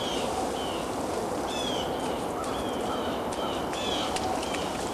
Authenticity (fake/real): real